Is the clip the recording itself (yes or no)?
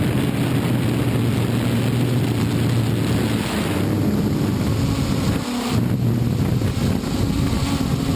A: yes